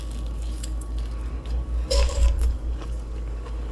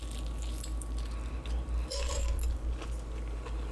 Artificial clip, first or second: first